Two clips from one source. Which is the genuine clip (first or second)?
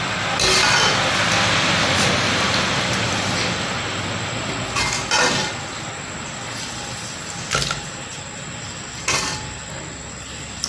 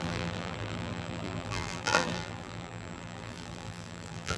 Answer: first